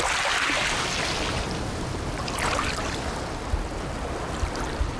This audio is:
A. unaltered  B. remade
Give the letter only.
A